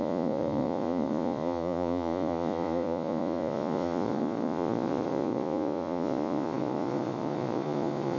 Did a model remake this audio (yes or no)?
yes